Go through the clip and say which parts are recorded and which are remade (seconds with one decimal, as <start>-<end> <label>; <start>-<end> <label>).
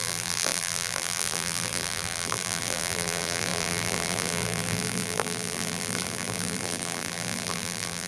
0.0-8.1 remade